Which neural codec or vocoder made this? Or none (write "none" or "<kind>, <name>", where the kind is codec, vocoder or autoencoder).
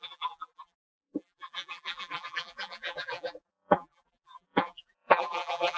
vocoder, BigVGAN v2